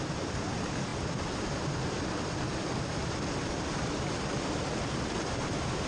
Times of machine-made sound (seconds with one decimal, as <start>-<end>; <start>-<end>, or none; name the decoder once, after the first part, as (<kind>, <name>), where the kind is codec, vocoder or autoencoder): none